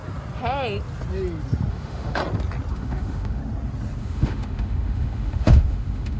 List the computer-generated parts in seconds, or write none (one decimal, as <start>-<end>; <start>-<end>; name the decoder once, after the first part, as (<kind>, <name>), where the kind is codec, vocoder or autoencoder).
1.7-2.2 (autoencoder, DAC-VAE); 2.7-3.4; 4.0-6.2